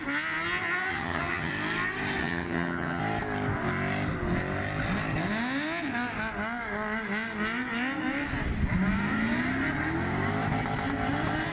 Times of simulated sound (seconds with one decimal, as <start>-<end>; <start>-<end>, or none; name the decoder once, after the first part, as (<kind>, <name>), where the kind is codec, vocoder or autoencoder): 0.9-1.5 (vocoder, HiFi-GAN); 2.2-3.0